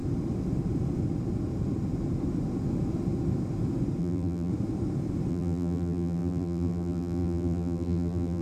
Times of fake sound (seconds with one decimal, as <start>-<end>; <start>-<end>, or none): 4.0-4.5; 5.3-8.4